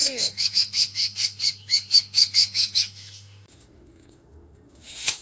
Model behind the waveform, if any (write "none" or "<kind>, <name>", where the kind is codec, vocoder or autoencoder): autoencoder, DAC-VAE